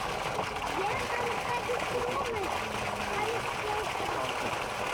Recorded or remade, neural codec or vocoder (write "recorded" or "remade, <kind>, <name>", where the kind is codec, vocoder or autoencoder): recorded